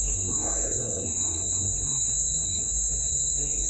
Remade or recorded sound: remade